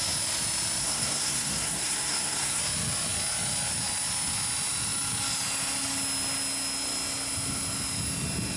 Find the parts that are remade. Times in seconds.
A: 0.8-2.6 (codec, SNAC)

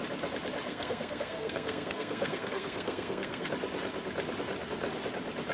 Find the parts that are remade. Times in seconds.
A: 0.7-3.5 (codec, SNAC)

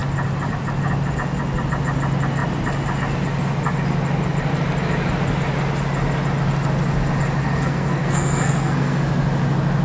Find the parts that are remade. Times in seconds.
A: 7.4-9.0 (codec, SNAC)

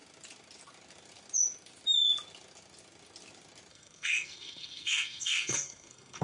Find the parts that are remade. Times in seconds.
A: 3.7-6.2 (codec, SNAC)

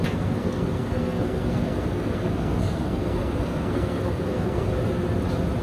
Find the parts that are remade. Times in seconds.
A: 0.0-4.7 (codec, SNAC)